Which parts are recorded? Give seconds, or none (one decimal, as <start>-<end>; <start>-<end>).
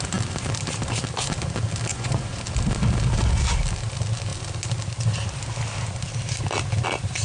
0.0-1.9; 2.4-7.2